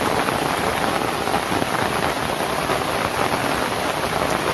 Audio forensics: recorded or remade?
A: recorded